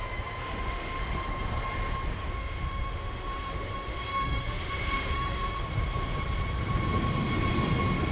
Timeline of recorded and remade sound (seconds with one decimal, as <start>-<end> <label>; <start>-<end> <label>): 0.0-0.4 recorded; 0.4-1.0 remade; 1.0-2.2 recorded; 2.2-5.6 remade; 5.6-8.1 recorded